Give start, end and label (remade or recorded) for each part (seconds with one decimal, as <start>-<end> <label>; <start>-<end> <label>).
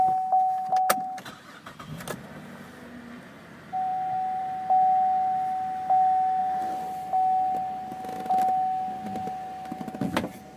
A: 0.0-10.6 recorded